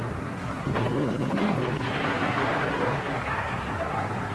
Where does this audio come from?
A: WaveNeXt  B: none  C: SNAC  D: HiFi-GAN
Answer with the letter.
C